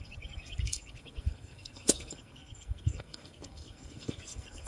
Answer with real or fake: fake